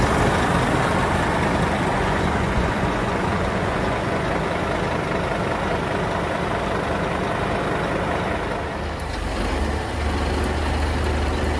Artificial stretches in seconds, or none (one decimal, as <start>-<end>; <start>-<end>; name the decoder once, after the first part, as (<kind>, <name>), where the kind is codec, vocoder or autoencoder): 1.9-4.3 (vocoder, Vocos)